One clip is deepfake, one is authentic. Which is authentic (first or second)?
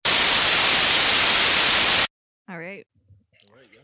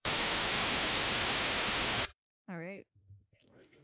first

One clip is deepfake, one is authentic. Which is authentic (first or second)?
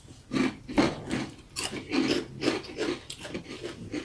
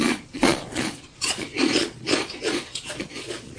first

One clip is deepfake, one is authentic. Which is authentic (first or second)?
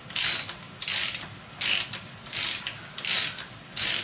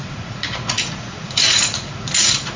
first